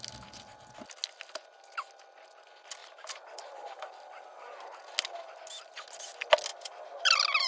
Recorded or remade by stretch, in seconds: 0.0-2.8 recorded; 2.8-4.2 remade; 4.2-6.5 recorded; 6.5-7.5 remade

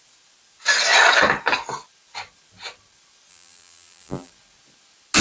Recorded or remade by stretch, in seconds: 0.0-3.3 recorded; 3.3-4.3 remade; 4.3-5.2 recorded

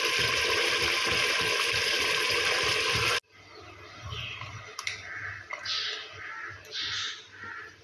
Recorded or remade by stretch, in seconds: 0.0-2.7 remade; 2.7-7.8 recorded

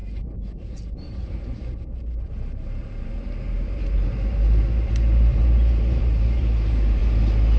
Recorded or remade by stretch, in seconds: 0.0-7.0 remade; 7.0-7.6 recorded

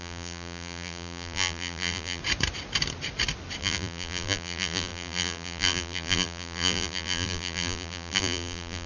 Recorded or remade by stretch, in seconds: 0.0-2.2 remade; 2.2-3.6 recorded; 3.6-8.9 remade

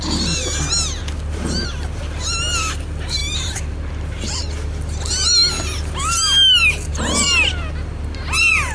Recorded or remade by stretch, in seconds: 0.0-1.0 recorded; 1.0-2.0 remade; 2.0-3.2 recorded; 3.2-4.4 remade; 4.4-8.7 recorded